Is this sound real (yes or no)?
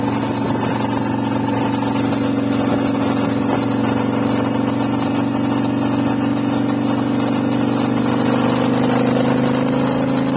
yes